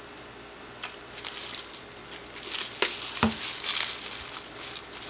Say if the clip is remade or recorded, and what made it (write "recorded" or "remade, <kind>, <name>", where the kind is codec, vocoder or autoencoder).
recorded